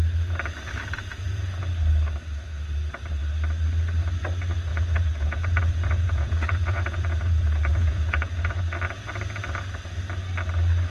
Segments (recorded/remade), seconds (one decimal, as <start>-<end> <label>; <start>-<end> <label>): 0.0-1.1 recorded; 1.1-1.6 remade; 1.6-4.7 recorded; 4.7-8.6 remade; 8.6-10.9 recorded